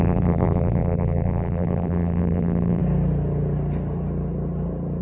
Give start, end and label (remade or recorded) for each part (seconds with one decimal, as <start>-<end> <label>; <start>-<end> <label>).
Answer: 0.0-2.8 remade; 2.8-5.0 recorded